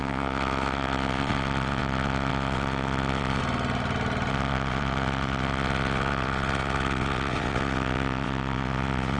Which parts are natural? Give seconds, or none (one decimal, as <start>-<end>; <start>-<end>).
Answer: 3.4-4.3